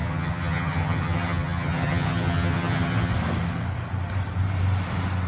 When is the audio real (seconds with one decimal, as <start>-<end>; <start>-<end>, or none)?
3.1-5.3